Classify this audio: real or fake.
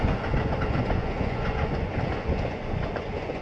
fake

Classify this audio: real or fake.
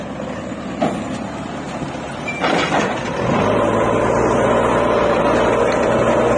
real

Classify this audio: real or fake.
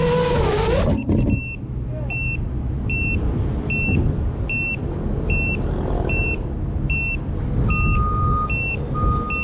real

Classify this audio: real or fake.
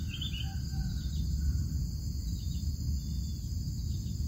real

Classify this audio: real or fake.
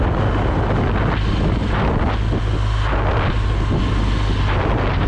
real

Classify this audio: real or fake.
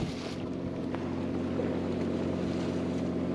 real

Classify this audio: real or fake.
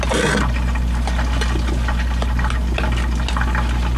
real